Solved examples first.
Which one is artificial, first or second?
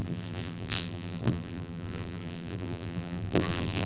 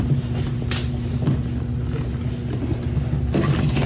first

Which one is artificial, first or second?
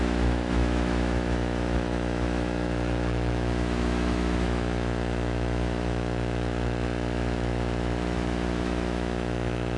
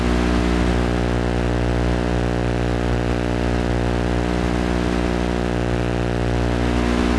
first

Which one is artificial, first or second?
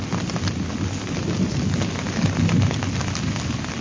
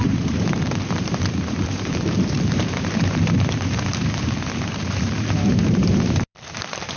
second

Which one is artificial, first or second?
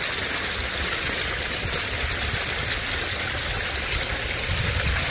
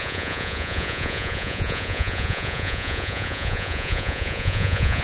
second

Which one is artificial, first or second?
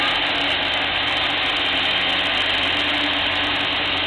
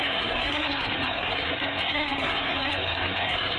second